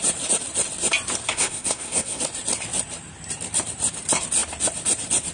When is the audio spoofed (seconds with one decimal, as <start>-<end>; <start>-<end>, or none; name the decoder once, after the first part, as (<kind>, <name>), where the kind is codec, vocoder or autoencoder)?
1.3-2.2 (codec, SNAC)